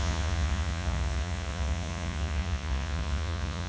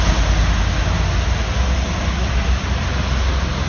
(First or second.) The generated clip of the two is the first